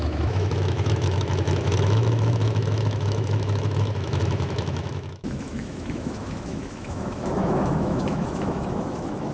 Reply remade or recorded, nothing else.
remade